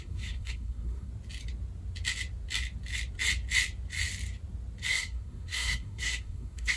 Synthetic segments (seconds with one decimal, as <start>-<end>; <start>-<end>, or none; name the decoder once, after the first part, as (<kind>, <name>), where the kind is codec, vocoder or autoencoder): 0.0-1.1 (codec, SNAC); 4.9-6.8